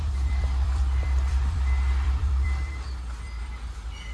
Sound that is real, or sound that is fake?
fake